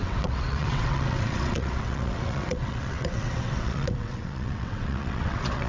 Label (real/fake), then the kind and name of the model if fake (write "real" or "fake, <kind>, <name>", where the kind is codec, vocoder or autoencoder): fake, vocoder, WaveNeXt